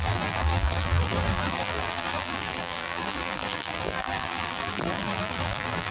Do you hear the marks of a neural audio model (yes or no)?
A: yes